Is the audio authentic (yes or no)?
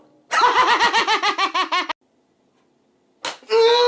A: yes